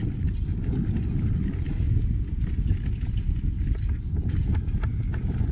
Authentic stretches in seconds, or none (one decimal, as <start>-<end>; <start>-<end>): 0.9-2.7; 4.4-5.5